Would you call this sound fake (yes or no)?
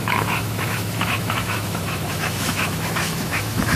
yes